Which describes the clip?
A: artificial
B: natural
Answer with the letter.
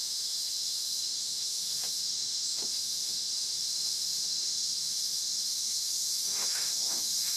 A